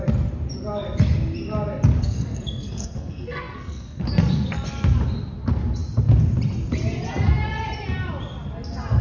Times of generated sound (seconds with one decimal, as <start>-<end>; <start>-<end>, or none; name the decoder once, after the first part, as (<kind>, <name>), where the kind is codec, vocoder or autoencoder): 2.0-4.1 (codec, SNAC)